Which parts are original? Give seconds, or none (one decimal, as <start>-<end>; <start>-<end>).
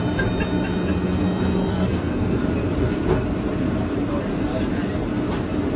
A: 0.0-1.7; 2.4-5.8